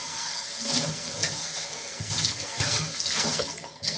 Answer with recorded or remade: remade